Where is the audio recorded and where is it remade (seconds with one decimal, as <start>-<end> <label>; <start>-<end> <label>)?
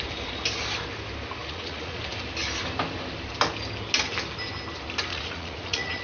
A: 0.0-1.4 recorded; 1.4-2.0 remade; 2.0-5.1 recorded; 5.1-6.0 remade